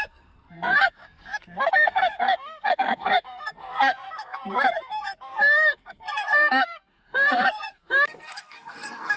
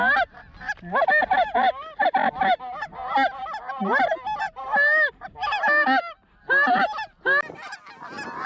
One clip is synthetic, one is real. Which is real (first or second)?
second